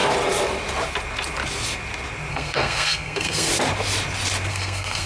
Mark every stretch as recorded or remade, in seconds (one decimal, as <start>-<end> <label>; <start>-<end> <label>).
0.0-2.3 recorded; 2.3-3.5 remade; 3.5-4.5 recorded; 4.5-5.1 remade

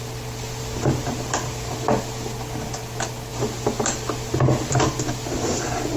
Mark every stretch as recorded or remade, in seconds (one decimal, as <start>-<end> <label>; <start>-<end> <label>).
0.0-6.0 recorded

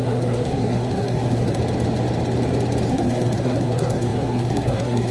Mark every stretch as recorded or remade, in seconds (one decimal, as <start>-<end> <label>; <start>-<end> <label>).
0.0-1.6 remade; 1.6-2.9 recorded; 2.9-5.1 remade

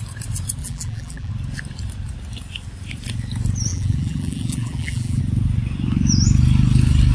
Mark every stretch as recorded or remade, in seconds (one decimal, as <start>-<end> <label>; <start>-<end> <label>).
0.0-0.6 recorded; 0.6-1.3 remade; 1.3-3.7 recorded; 3.7-5.2 remade; 5.2-7.1 recorded

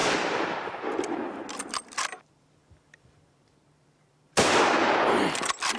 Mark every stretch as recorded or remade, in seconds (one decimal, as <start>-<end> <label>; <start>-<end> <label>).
0.0-5.8 remade

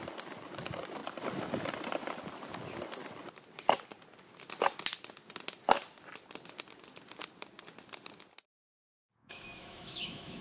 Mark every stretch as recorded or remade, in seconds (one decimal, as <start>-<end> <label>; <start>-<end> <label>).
0.0-9.2 recorded; 9.2-10.4 remade

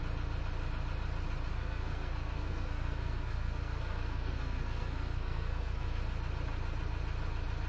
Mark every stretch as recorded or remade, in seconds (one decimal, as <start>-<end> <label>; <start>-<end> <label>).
0.0-1.5 recorded; 1.5-6.0 remade; 6.0-7.7 recorded